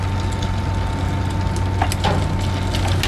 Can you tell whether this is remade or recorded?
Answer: recorded